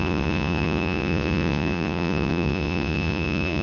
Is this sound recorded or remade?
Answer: remade